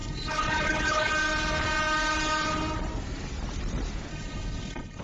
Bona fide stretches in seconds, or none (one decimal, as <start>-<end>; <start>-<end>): 1.1-4.1